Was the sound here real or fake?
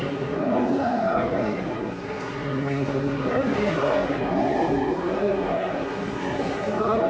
fake